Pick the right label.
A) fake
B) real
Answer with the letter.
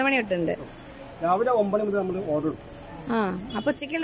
B